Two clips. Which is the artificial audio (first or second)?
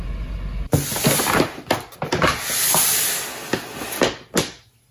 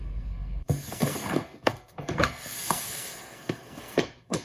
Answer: second